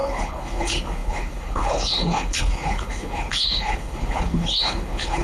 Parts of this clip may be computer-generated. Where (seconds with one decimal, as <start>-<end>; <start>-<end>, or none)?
0.0-5.2